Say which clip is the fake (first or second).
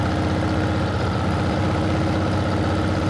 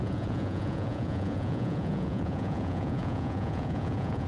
second